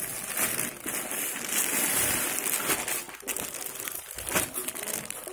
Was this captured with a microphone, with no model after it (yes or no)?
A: yes